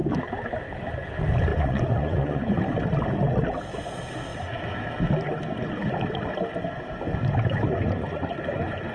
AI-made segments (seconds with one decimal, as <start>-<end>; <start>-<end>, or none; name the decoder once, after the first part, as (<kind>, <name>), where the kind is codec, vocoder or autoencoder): 1.5-2.6 (vocoder, Vocos); 7.2-8.4